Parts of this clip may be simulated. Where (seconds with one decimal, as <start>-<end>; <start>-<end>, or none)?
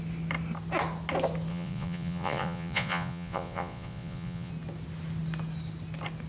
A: 1.5-4.5